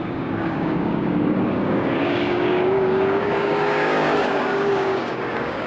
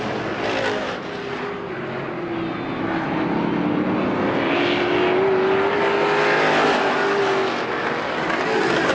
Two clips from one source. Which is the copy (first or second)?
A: first